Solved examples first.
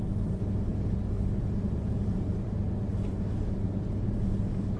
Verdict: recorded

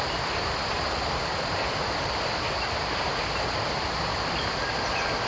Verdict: recorded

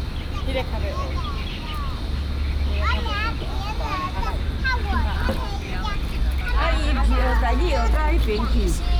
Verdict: recorded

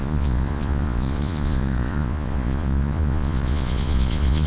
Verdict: remade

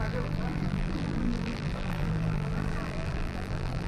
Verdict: remade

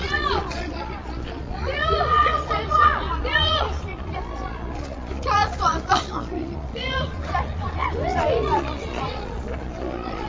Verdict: remade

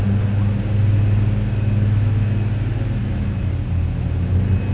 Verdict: recorded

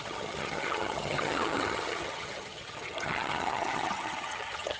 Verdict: remade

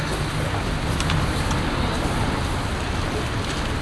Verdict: recorded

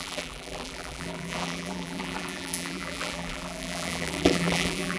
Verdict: remade